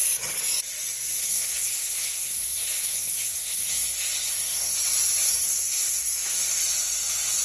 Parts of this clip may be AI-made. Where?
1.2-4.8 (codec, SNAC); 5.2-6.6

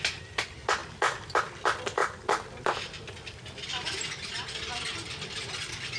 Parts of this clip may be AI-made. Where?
none

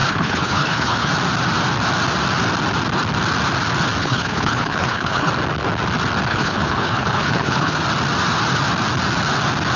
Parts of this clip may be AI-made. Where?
0.0-1.1 (codec, HILCodec); 4.0-5.3; 6.3-7.8

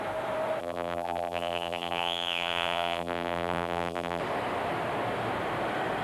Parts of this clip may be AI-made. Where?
0.6-4.2 (vocoder, BigVGAN v2)

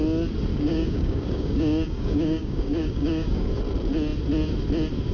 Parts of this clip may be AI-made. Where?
0.5-3.6 (codec, DAC)